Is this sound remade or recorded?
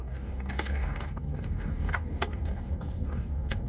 remade